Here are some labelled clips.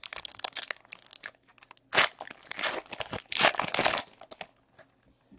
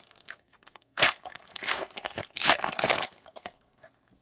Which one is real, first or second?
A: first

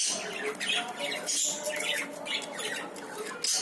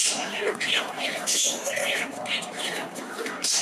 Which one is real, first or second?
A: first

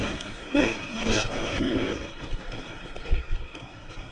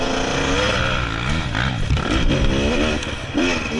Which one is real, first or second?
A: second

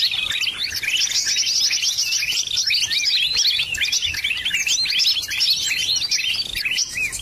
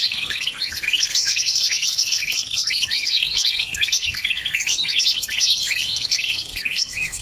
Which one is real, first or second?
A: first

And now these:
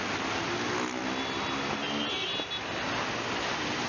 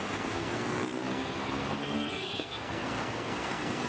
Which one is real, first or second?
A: first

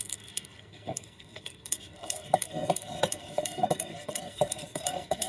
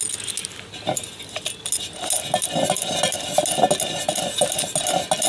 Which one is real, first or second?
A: second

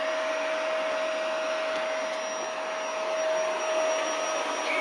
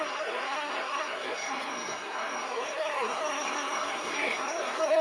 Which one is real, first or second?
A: first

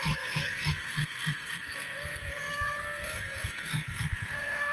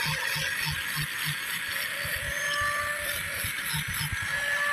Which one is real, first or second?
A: second